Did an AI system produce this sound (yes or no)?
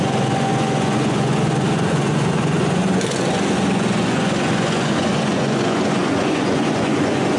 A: yes